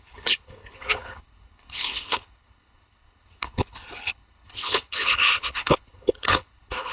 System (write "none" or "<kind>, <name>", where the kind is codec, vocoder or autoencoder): codec, HILCodec